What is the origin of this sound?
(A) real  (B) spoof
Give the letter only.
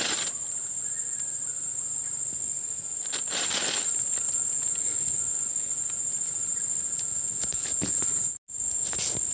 A